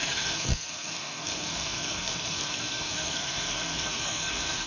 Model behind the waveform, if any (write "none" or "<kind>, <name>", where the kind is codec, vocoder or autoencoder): codec, SNAC